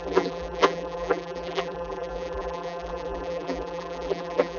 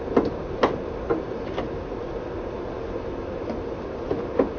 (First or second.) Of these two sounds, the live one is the second